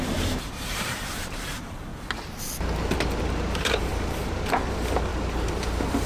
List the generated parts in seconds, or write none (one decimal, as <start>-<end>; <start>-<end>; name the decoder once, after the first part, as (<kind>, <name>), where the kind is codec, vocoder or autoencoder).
0.0-1.9 (vocoder, BigVGAN v2); 3.2-5.1